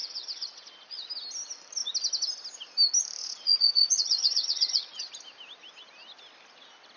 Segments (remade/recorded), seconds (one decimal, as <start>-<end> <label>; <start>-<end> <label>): 0.0-1.1 remade; 1.1-3.2 recorded; 3.2-5.1 remade; 5.1-7.0 recorded